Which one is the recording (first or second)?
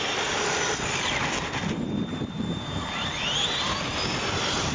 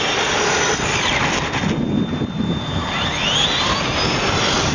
second